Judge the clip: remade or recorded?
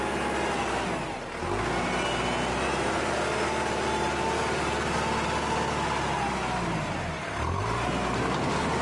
recorded